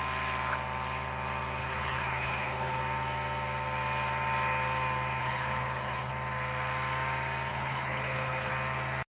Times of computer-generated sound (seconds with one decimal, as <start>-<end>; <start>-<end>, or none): 1.6-2.8; 5.2-6.1; 7.5-8.5